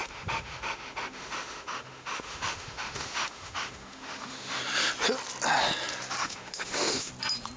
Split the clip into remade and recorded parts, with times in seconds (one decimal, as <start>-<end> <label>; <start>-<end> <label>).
0.0-4.6 remade; 4.6-6.2 recorded; 6.2-7.1 remade; 7.1-7.6 recorded